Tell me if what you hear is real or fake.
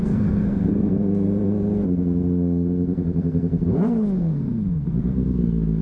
fake